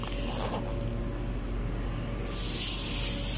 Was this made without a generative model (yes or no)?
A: yes